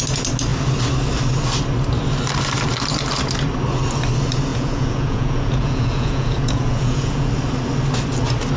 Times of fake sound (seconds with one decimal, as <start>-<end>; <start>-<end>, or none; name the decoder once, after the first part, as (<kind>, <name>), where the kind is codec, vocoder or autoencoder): 4.5-7.3 (vocoder, Vocos)